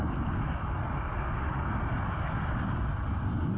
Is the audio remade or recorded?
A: recorded